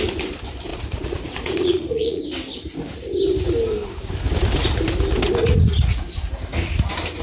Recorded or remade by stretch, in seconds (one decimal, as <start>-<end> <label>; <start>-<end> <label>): 0.0-0.7 recorded; 0.7-2.2 remade; 2.2-5.4 recorded; 5.4-6.0 remade; 6.0-7.2 recorded